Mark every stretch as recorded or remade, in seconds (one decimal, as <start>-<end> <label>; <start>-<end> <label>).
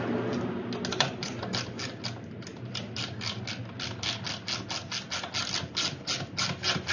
0.0-0.9 recorded; 0.9-1.4 remade; 1.4-6.9 recorded